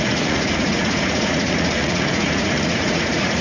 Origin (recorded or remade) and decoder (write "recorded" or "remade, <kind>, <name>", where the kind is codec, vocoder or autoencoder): remade, vocoder, Vocos